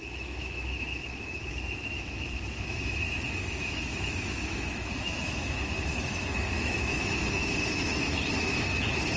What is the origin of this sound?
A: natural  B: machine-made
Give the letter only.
B